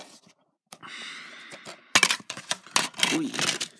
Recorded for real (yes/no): yes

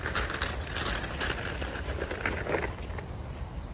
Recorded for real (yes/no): yes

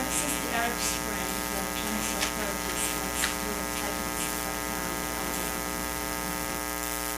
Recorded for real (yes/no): yes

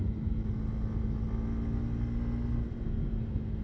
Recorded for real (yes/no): yes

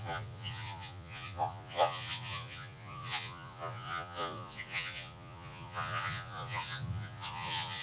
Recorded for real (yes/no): no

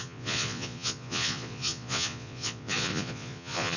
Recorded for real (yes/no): no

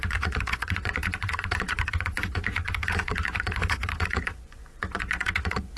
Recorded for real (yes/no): no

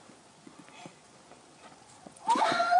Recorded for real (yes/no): no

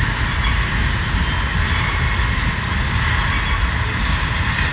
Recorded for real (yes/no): yes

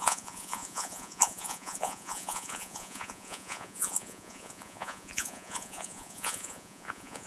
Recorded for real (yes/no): no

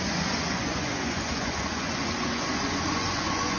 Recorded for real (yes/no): no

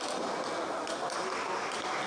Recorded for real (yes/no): yes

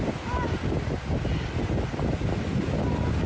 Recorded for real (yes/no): yes